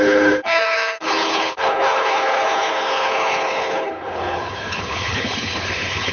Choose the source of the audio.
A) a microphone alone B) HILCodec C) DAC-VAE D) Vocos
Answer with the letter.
B